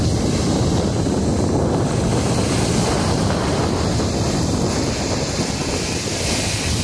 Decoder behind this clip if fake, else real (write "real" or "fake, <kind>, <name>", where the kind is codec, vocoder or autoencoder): real